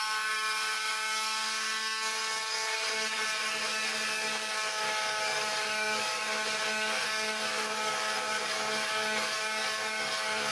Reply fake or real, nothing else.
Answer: fake